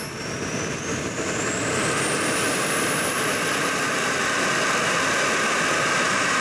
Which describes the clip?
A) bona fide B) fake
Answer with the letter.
A